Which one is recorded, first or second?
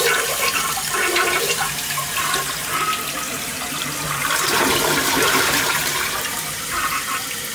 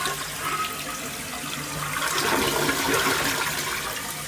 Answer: second